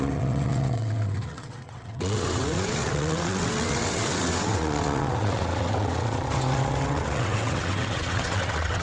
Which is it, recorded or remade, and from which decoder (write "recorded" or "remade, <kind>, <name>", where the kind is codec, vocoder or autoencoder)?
remade, vocoder, WaveNeXt